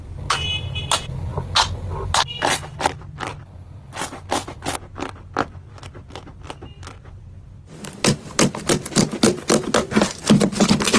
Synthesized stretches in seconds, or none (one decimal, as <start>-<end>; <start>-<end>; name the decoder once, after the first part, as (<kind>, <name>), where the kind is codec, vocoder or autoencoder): none